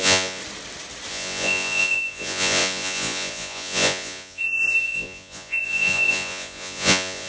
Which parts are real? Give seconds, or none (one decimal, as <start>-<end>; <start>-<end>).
0.4-1.1